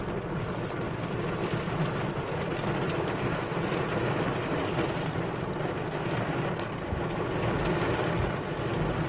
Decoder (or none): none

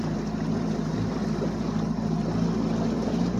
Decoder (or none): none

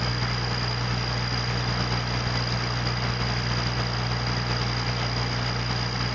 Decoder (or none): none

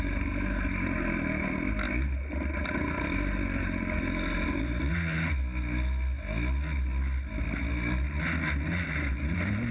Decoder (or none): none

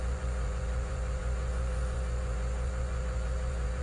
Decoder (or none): vocoder, Vocos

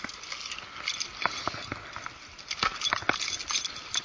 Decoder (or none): none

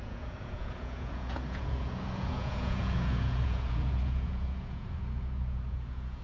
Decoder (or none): vocoder, Vocos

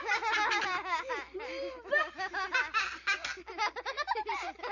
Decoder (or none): none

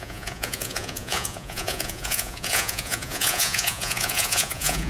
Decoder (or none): vocoder, Vocos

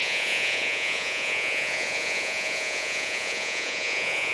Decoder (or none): vocoder, Vocos